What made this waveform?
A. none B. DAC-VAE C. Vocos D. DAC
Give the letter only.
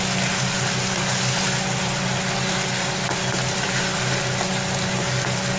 A